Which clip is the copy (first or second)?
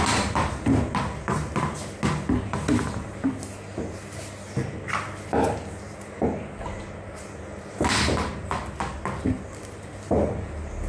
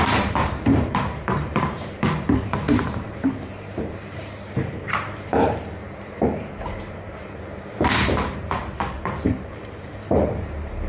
second